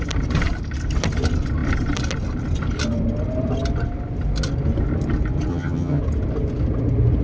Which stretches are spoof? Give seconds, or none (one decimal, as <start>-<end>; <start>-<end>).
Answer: 5.5-6.0